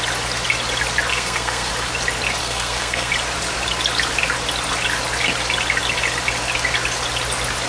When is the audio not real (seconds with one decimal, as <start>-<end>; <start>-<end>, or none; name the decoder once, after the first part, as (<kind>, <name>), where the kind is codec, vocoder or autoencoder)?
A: 1.1-1.7 (codec, SNAC); 2.4-3.1